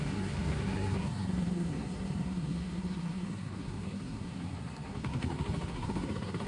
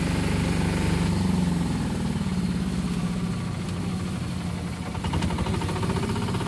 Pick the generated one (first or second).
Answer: first